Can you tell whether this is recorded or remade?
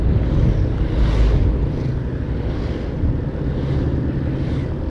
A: recorded